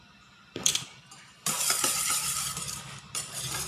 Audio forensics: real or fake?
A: fake